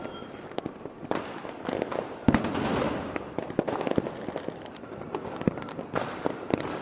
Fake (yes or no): no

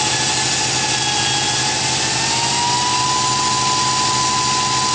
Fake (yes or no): no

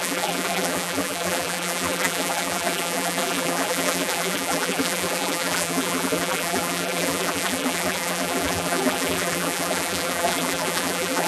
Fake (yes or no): yes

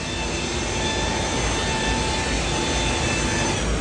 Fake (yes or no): no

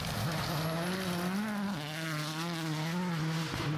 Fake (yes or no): no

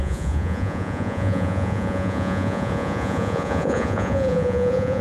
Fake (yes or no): yes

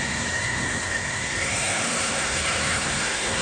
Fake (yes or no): yes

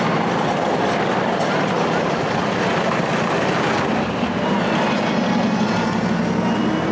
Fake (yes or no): no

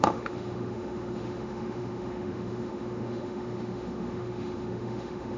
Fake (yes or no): yes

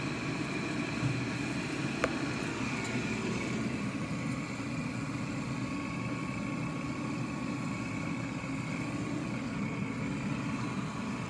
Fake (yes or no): no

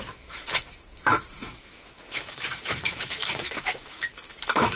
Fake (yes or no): yes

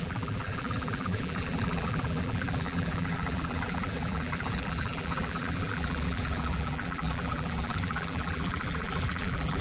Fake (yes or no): yes